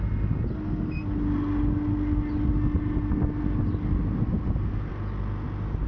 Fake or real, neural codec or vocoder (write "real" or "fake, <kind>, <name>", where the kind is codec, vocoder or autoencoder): real